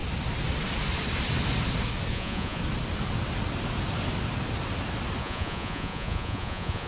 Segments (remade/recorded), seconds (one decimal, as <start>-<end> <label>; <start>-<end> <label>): 0.0-2.1 recorded; 2.1-2.6 remade; 2.6-5.2 recorded; 5.2-6.9 remade